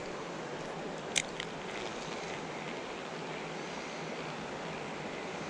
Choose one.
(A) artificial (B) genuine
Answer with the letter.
B